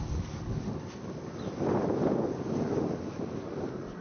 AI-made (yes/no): no